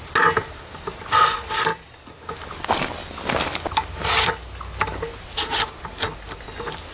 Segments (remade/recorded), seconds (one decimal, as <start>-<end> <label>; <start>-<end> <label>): 0.0-3.0 recorded; 3.0-3.7 remade; 3.7-6.9 recorded